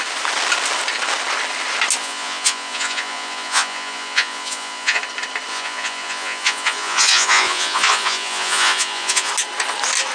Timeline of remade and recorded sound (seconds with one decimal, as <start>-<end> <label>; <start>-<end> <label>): 0.0-2.0 recorded; 2.0-5.0 remade; 5.0-5.5 recorded; 5.5-9.3 remade; 9.3-10.1 recorded